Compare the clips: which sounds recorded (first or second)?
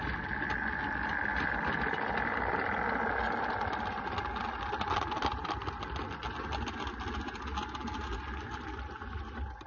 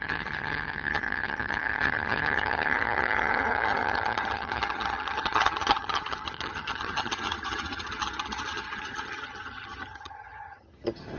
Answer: first